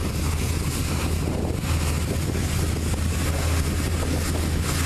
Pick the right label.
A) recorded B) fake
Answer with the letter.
A